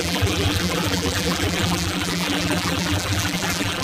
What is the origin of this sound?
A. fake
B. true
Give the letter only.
A